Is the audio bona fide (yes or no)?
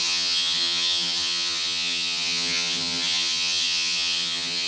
no